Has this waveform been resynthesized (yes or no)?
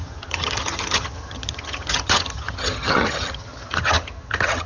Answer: yes